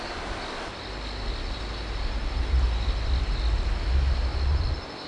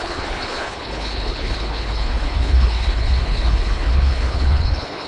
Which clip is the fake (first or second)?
second